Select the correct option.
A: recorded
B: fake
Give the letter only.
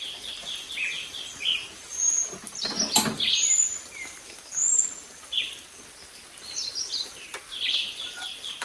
A